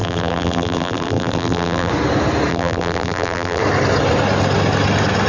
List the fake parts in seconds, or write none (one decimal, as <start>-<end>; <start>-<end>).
0.0-1.9; 2.5-3.6